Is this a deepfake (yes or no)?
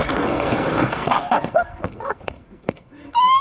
yes